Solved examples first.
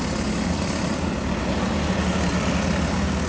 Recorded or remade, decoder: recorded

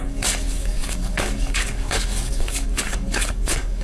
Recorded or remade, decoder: remade, codec, DAC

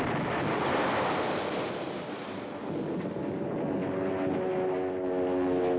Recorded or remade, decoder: recorded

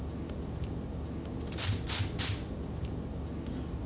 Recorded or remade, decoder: recorded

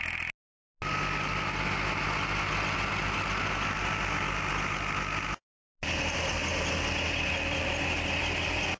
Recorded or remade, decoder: recorded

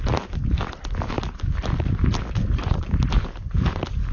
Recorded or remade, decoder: recorded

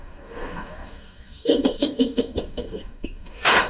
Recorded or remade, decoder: remade, codec, DAC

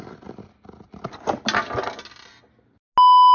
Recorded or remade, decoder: recorded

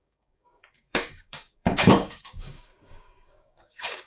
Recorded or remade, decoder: remade, codec, DAC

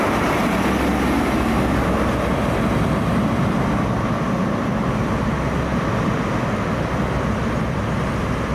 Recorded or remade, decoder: recorded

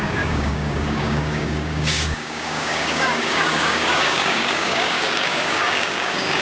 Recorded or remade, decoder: remade, codec, DAC